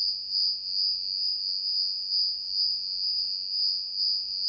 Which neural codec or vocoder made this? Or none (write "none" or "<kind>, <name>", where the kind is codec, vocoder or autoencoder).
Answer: vocoder, Vocos